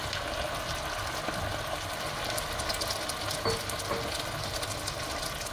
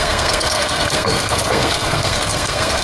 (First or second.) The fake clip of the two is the second